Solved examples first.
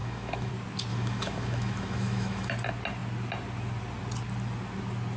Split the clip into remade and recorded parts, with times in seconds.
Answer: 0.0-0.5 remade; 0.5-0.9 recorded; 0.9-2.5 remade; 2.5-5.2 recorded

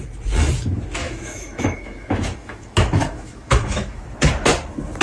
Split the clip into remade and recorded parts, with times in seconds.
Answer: 0.0-1.0 recorded; 1.0-4.0 remade; 4.0-5.0 recorded

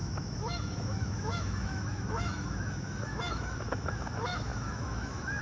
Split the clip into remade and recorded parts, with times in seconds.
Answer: 0.0-5.4 remade

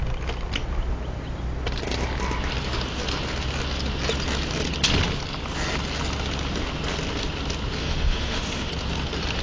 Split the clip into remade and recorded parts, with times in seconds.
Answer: 0.0-7.8 recorded; 7.8-8.7 remade; 8.7-9.4 recorded